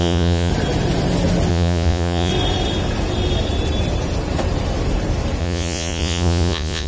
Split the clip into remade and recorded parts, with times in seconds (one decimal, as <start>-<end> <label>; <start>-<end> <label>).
0.0-0.5 remade; 0.5-1.5 recorded; 1.5-2.3 remade; 2.3-5.4 recorded; 5.4-6.9 remade